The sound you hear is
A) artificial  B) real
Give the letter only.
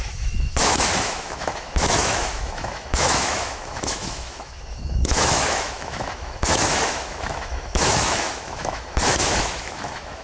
A